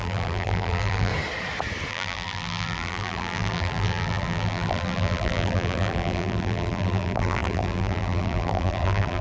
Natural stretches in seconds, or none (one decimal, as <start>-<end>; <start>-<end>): 1.1-1.9

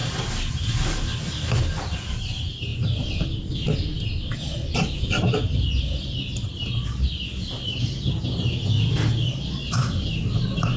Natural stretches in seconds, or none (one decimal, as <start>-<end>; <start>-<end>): 0.0-10.8

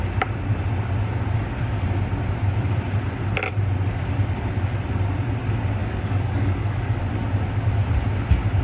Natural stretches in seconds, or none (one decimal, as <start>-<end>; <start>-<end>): 0.0-5.8; 7.0-8.6

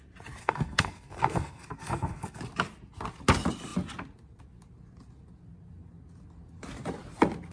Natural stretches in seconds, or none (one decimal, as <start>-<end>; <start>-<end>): 0.0-0.4; 2.4-7.5

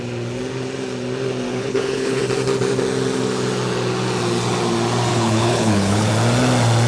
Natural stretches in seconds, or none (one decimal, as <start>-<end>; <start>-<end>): 0.0-1.5; 2.2-5.1; 6.1-6.9

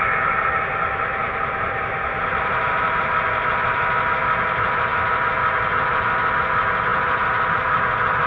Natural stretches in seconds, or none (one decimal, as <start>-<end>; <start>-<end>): 0.0-1.2; 3.1-6.9; 7.9-8.3